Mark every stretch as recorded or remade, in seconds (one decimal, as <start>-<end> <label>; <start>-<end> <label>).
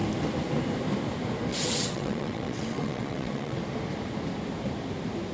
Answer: 0.0-1.5 recorded; 1.5-3.6 remade; 3.6-5.3 recorded